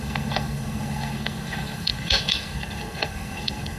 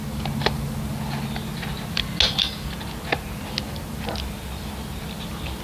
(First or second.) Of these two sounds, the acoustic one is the second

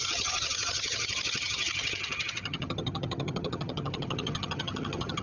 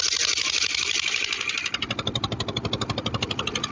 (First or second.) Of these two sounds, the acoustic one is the second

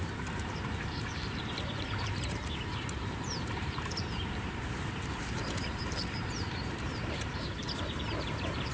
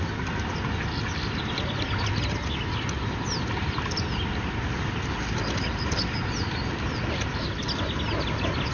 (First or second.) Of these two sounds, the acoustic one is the second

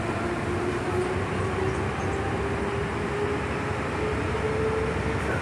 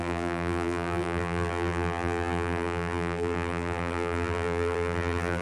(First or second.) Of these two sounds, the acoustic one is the first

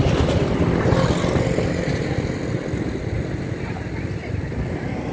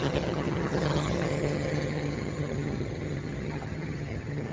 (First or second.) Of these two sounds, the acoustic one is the first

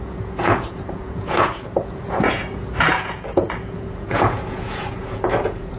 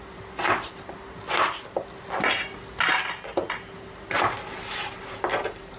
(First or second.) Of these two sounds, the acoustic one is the second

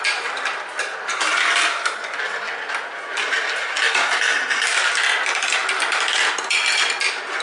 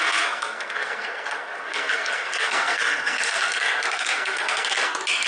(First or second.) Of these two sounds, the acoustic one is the first